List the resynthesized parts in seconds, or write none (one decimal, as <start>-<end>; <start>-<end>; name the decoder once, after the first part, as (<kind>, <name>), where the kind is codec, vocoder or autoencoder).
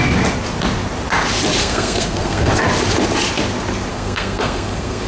1.6-2.5 (codec, SNAC); 3.9-5.1